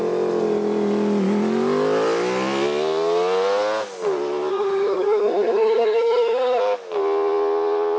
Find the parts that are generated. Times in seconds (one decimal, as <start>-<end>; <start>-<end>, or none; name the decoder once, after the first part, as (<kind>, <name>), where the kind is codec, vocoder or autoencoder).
4.5-6.6 (codec, SNAC)